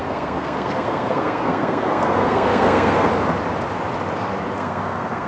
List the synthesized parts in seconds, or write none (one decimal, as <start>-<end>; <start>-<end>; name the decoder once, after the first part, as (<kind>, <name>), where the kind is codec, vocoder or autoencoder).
0.0-3.1 (codec, SNAC); 4.6-5.3